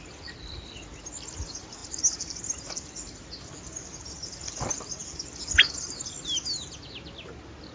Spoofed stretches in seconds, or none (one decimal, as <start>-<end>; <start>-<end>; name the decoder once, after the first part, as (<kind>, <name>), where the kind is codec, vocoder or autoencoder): none